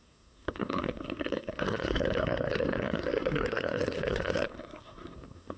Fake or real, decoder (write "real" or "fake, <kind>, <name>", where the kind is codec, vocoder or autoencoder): fake, codec, SNAC